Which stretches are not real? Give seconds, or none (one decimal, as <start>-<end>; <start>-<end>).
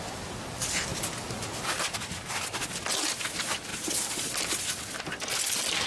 none